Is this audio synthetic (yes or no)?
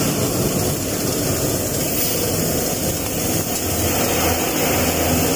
no